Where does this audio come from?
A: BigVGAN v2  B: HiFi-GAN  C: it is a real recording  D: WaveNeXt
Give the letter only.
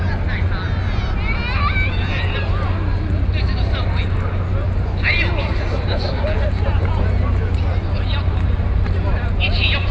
C